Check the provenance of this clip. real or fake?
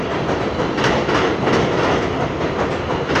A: real